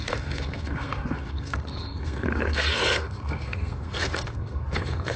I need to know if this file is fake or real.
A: fake